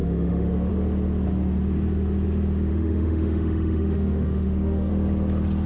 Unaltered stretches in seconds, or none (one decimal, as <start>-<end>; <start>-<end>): 0.7-2.7; 4.9-5.7